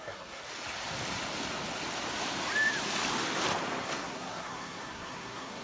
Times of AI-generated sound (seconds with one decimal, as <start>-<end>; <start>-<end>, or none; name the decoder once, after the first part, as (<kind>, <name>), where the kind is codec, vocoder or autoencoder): 0.0-0.4 (codec, SNAC); 3.8-5.6